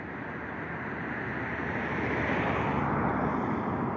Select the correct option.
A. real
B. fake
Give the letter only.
A